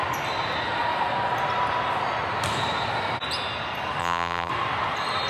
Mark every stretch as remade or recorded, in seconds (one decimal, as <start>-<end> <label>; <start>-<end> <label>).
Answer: 0.0-4.0 recorded; 4.0-4.5 remade; 4.5-5.3 recorded